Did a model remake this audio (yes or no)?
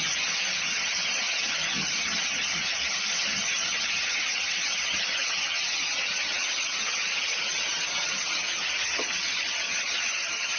yes